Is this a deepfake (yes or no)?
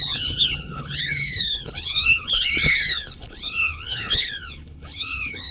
yes